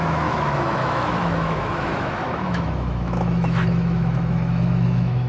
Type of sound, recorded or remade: remade